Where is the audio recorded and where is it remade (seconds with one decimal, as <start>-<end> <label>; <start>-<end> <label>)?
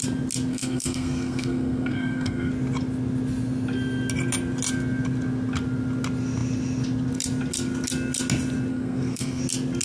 0.0-0.5 recorded; 0.5-2.5 remade; 2.5-8.7 recorded; 8.7-9.4 remade; 9.4-9.8 recorded